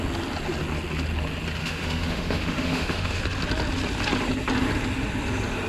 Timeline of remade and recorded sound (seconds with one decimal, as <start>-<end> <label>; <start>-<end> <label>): 0.0-1.6 recorded; 1.6-3.2 remade; 3.2-5.7 recorded